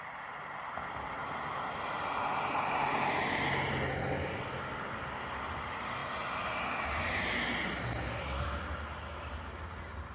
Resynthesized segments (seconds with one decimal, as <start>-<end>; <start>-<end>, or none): none